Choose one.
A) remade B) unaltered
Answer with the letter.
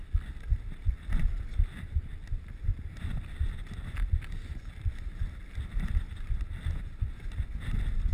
B